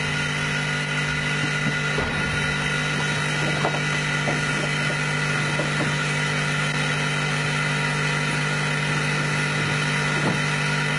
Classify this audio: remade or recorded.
recorded